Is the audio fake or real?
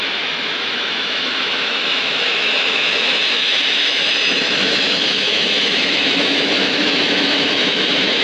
fake